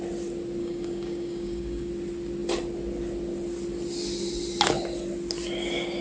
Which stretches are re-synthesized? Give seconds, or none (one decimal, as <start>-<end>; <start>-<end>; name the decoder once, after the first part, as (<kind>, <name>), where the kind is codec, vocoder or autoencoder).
0.6-1.9 (codec, DAC)

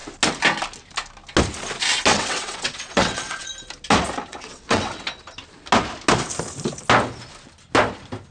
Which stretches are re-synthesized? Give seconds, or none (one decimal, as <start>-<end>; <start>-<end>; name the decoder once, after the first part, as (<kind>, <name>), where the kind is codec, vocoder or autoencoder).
2.1-3.5 (vocoder, WaveNeXt); 4.3-5.0

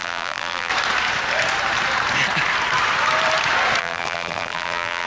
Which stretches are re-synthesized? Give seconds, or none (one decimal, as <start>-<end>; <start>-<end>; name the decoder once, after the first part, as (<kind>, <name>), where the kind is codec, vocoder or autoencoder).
0.0-0.7 (vocoder, BigVGAN v2); 3.8-5.1